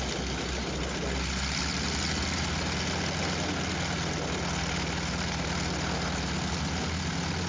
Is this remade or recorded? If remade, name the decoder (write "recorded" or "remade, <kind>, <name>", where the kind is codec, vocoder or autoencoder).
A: recorded